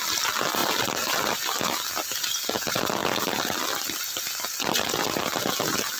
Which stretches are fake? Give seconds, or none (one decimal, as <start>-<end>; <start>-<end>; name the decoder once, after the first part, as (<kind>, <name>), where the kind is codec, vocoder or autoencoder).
0.6-1.3 (vocoder, BigVGAN v2); 3.0-3.6